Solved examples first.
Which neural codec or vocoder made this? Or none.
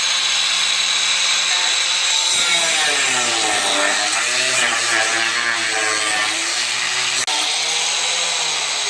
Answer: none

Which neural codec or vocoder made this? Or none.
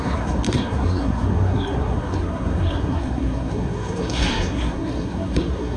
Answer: codec, SNAC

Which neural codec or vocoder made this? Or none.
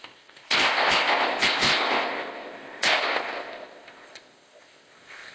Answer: codec, ZipCodec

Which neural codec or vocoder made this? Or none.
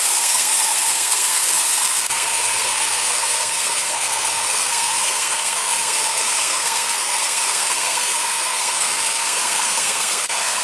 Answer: codec, SNAC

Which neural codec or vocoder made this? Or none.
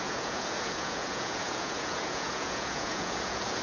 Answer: vocoder, Vocos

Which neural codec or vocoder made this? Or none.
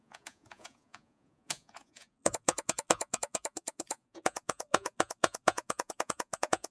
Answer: vocoder, Vocos